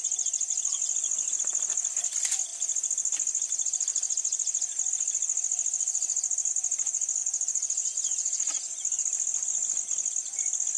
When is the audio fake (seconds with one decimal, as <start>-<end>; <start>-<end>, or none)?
7.2-8.6